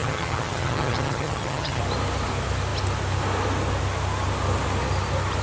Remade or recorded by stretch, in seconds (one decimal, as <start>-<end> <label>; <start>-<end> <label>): 0.0-1.8 remade; 1.8-5.4 recorded